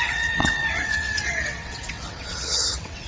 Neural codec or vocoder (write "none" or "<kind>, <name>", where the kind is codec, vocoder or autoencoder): vocoder, WaveNeXt